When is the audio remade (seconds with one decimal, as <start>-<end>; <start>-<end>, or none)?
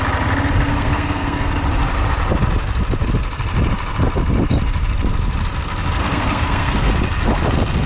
0.7-1.5; 6.0-6.9